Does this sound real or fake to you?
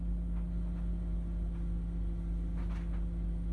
real